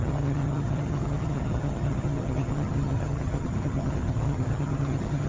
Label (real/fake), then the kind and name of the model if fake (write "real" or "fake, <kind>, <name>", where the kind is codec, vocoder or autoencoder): fake, vocoder, HiFi-GAN